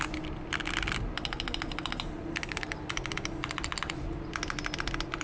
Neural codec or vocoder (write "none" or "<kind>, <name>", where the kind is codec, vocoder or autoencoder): none